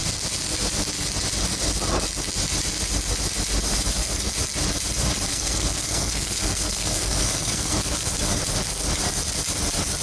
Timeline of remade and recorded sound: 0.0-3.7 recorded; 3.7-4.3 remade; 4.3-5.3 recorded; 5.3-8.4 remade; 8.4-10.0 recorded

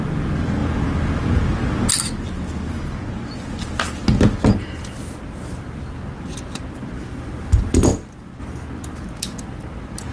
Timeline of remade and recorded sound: 0.0-10.1 recorded

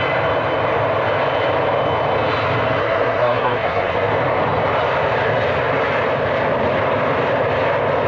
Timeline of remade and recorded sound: 0.0-2.8 recorded; 2.8-4.1 remade; 4.1-8.1 recorded

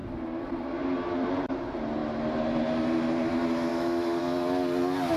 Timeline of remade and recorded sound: 0.0-3.7 recorded; 3.7-4.2 remade; 4.2-5.2 recorded